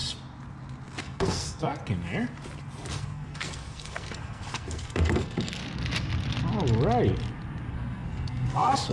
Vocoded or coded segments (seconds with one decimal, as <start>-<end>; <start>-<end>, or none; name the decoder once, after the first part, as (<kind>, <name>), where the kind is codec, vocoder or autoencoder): 1.0-1.8 (codec, SNAC); 2.9-5.6; 7.7-8.9

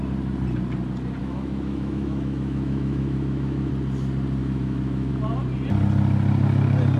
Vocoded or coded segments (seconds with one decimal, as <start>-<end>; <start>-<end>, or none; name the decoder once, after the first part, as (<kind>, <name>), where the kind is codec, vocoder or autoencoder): 1.2-3.7 (autoencoder, DAC-VAE); 4.4-5.1

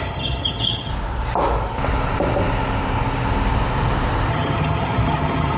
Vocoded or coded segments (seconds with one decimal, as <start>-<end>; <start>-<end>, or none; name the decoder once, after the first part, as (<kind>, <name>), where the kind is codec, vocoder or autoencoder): 0.0-0.9 (vocoder, HiFi-GAN); 4.3-5.6

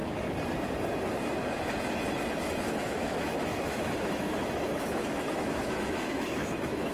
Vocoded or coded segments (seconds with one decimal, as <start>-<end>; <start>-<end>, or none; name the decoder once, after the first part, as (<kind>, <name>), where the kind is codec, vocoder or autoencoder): 2.6-6.9 (autoencoder, DAC-VAE)

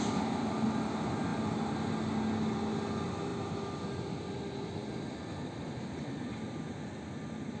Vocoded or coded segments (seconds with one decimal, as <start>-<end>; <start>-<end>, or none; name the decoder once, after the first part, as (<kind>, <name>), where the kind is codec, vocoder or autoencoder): none

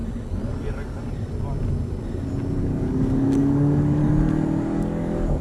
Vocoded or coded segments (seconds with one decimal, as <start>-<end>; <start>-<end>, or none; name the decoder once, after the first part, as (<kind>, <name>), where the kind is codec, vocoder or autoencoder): 2.6-4.0 (codec, DAC); 4.6-5.4

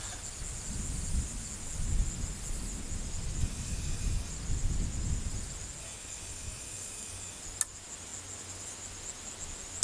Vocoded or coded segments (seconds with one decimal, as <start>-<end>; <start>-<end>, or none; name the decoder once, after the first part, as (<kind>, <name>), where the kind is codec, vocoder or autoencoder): 3.4-4.3 (codec, DAC); 5.8-7.4

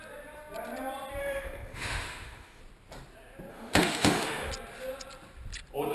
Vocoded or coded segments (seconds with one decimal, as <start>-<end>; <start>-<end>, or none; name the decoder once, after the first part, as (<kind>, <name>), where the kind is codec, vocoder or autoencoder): 1.2-2.6 (autoencoder, DAC-VAE); 3.5-4.5